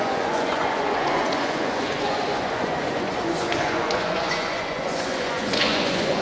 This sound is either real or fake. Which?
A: fake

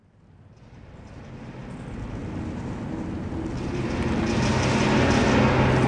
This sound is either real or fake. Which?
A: real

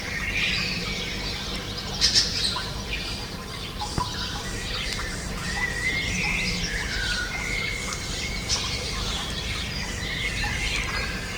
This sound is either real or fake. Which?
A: fake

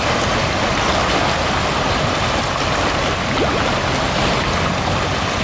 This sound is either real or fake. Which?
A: real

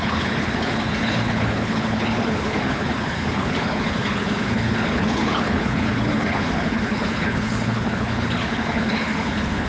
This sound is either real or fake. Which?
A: fake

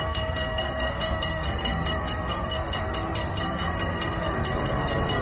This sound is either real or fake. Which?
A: fake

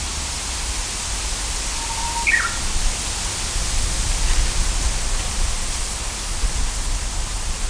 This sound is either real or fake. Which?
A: real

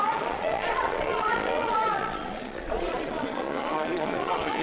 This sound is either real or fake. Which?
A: fake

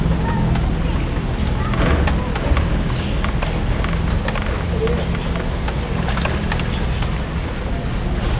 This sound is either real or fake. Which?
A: real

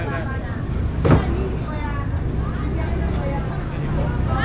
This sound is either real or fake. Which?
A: real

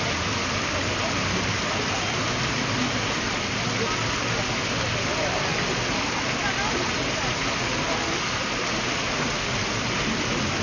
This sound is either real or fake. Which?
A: real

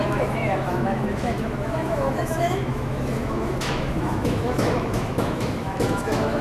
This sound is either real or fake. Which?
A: fake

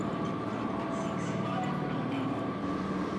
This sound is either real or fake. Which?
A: fake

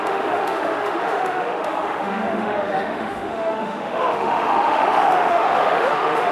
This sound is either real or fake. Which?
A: fake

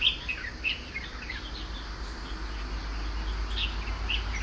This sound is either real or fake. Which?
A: real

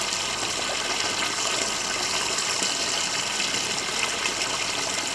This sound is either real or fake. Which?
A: real